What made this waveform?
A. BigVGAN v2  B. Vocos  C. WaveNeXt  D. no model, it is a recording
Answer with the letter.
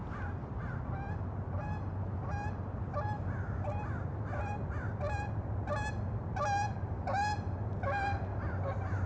D